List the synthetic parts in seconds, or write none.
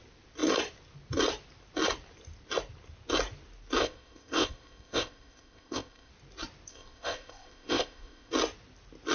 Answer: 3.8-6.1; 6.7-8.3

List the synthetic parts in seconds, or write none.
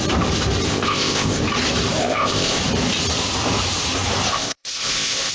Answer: 0.7-1.4; 2.0-2.6; 4.3-5.3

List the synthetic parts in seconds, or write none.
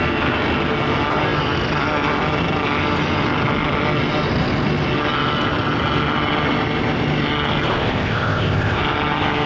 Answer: 7.8-8.8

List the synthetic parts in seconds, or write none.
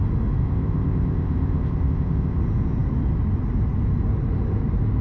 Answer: 0.4-2.4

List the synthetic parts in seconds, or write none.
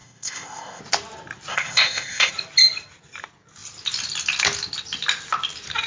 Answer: 0.0-0.8; 1.5-2.3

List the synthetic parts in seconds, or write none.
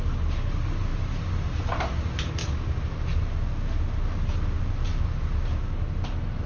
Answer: none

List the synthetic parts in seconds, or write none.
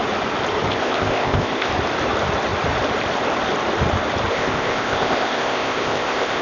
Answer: 0.7-1.7; 4.3-6.4